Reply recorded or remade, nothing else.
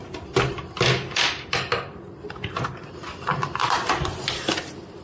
recorded